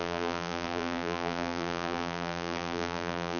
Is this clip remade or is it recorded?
remade